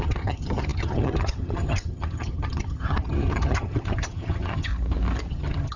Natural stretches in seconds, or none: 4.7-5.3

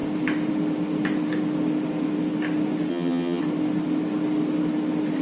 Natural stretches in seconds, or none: 0.0-2.9; 3.4-5.2

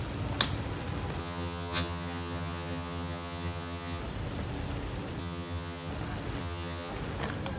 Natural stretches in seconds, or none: 0.0-1.2; 4.0-5.2; 5.9-6.4; 6.9-7.6

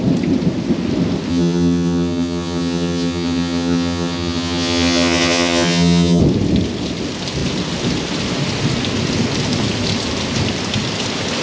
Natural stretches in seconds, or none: 0.0-1.3; 6.2-11.4

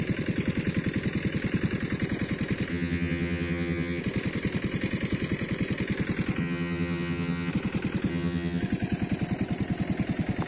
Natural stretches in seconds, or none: 0.0-2.7; 4.0-6.4; 7.5-8.1; 8.6-10.5